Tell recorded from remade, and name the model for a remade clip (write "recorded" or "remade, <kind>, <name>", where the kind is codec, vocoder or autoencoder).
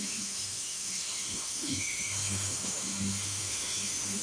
remade, autoencoder, DAC-VAE